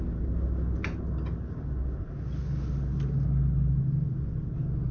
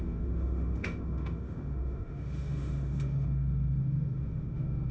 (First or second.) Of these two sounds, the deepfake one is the second